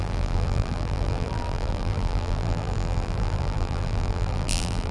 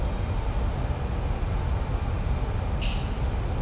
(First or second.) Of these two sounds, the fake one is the first